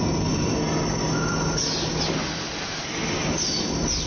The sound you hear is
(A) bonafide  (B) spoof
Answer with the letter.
A